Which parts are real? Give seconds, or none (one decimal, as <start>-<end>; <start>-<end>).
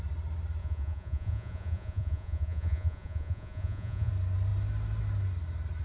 0.0-0.6; 4.1-5.8